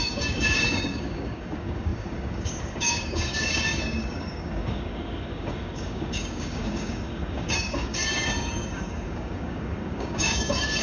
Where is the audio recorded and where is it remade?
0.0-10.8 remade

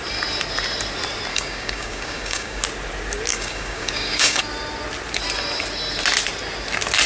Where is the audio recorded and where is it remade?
0.0-1.3 recorded; 1.3-2.6 remade; 2.6-3.3 recorded; 3.3-4.4 remade; 4.4-7.1 recorded

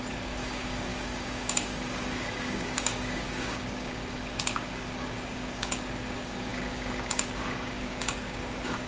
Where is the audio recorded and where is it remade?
0.0-8.9 remade

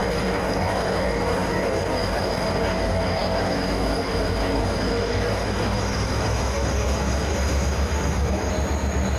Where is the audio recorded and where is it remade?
0.0-8.5 remade; 8.5-9.2 recorded

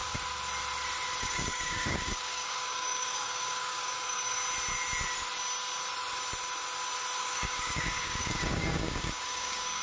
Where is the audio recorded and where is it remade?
0.0-1.2 recorded; 1.2-4.4 remade; 4.4-7.2 recorded; 7.2-9.8 remade

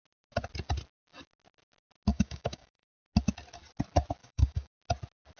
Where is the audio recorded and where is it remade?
0.0-2.1 recorded; 2.1-2.9 remade; 2.9-4.2 recorded; 4.2-4.8 remade; 4.8-5.4 recorded